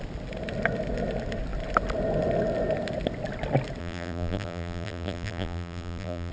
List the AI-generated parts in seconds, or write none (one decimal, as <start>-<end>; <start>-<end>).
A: 3.8-6.3